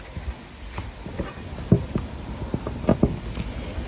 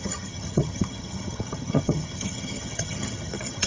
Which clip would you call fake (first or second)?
second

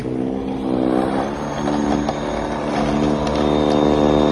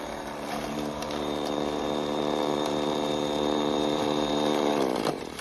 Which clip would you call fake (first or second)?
second